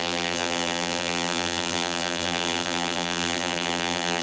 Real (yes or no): no